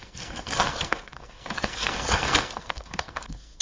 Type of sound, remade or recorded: remade